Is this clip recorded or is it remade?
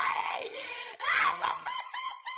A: remade